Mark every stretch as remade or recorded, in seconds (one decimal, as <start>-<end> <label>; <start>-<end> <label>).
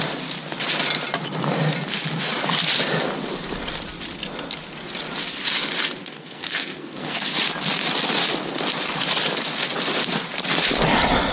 0.0-6.0 recorded; 6.0-7.3 remade; 7.3-11.3 recorded